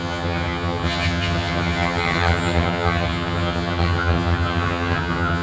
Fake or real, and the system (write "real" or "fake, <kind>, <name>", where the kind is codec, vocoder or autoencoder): fake, vocoder, HiFi-GAN